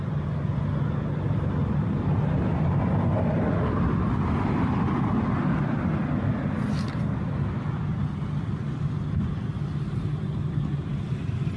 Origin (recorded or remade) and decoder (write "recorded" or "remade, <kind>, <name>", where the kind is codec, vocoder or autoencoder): recorded